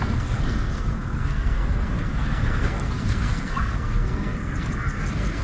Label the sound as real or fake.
fake